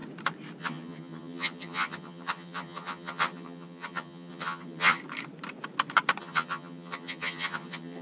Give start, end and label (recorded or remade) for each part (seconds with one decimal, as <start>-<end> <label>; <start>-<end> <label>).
0.0-0.6 recorded; 0.6-5.0 remade; 5.0-6.2 recorded; 6.2-8.0 remade